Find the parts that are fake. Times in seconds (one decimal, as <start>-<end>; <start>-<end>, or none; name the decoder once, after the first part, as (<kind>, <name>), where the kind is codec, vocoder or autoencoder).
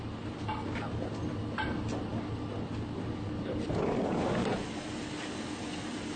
none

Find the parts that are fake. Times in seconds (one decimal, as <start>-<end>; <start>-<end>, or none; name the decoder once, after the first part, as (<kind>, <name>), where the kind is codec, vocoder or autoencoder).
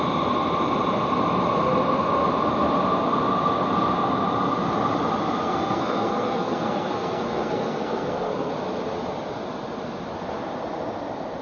5.4-8.5 (codec, SNAC)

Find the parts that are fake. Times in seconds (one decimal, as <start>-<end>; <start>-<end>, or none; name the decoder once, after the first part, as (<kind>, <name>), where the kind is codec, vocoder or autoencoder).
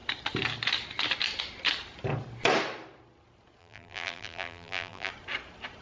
3.6-5.1 (vocoder, BigVGAN v2)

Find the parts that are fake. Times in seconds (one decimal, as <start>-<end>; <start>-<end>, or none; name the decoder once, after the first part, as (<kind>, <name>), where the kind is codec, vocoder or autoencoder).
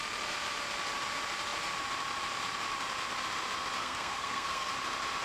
3.8-4.7 (codec, SNAC)